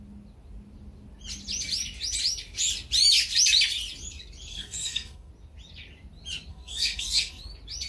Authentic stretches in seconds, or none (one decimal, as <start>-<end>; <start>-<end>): 0.0-4.5; 5.3-6.5; 7.4-7.9